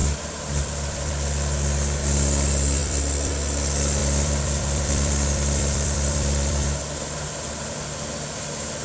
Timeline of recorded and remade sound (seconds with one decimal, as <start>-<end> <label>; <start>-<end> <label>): 0.0-1.1 remade; 1.1-2.8 recorded; 2.8-3.3 remade; 3.3-4.0 recorded; 4.0-6.8 remade; 6.8-8.8 recorded